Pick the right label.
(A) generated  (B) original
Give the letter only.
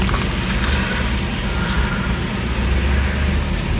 B